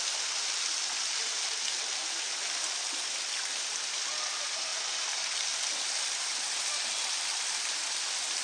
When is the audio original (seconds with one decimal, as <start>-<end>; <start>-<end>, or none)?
0.0-8.4